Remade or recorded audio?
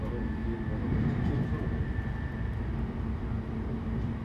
recorded